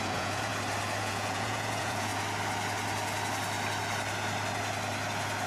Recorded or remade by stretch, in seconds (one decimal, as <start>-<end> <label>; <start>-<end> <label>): 0.0-0.5 remade; 0.5-1.0 recorded; 1.0-2.1 remade; 2.1-5.5 recorded